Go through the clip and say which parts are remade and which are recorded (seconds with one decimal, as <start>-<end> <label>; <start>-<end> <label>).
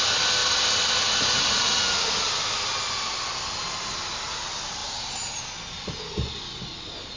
0.0-4.8 recorded; 4.8-5.4 remade; 5.4-7.2 recorded